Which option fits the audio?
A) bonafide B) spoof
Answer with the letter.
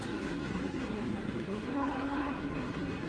B